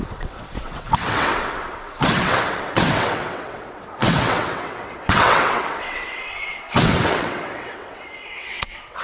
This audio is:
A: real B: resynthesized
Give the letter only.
B